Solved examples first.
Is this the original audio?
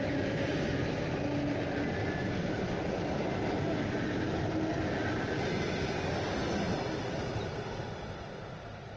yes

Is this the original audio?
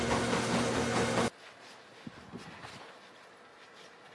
yes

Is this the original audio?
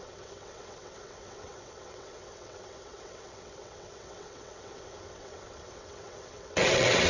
no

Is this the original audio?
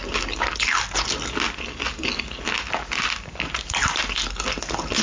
yes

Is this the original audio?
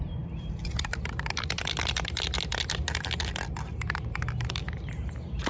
yes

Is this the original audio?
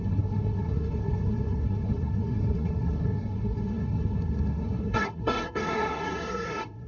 no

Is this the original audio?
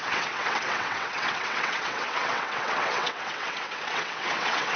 no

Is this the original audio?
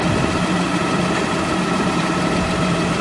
no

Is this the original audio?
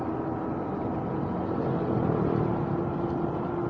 yes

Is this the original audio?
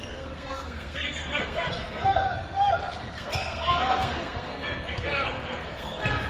no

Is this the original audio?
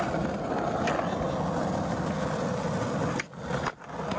yes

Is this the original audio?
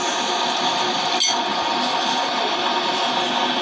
yes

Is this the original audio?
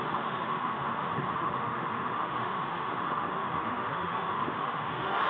no